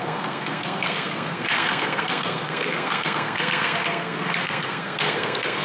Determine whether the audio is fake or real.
fake